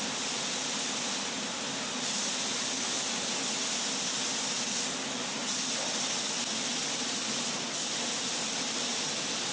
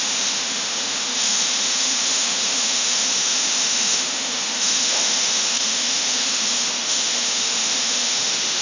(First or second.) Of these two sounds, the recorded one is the first